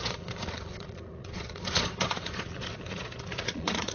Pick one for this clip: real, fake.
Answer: fake